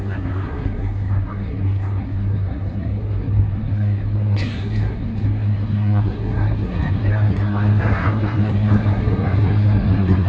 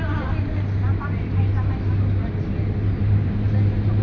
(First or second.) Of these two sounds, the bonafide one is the second